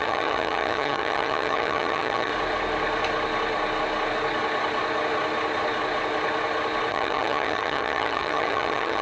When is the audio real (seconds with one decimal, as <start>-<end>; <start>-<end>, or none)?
2.3-6.9